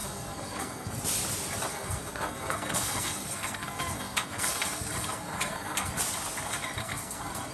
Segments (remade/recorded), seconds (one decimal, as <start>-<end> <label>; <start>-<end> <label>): 0.0-0.9 remade; 0.9-1.7 recorded; 1.7-5.9 remade; 5.9-6.8 recorded; 6.8-7.5 remade